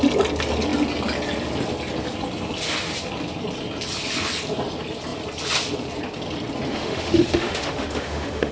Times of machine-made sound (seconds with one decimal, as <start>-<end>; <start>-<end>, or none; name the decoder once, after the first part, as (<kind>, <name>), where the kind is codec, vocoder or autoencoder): 6.7-8.5 (autoencoder, DAC-VAE)